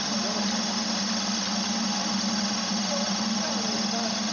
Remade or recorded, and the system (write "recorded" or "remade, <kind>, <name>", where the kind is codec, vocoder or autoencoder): recorded